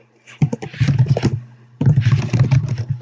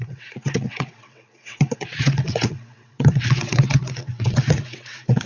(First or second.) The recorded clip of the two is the first